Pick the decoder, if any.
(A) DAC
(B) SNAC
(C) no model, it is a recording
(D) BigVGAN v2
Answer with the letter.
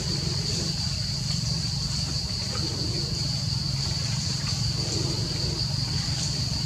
D